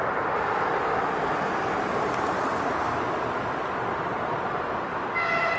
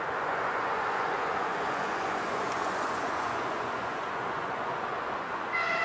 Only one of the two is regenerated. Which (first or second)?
second